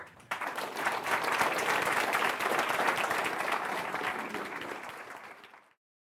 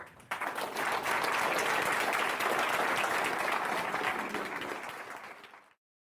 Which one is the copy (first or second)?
first